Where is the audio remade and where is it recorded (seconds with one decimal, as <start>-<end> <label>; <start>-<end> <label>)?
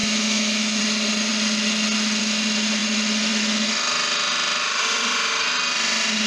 0.0-0.8 remade; 0.8-6.3 recorded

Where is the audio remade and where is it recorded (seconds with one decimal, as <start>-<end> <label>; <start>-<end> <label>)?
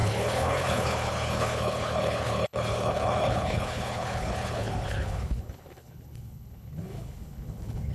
0.0-7.9 remade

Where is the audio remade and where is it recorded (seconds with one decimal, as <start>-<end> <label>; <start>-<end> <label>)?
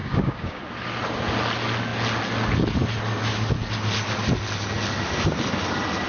0.0-0.6 remade; 0.6-6.1 recorded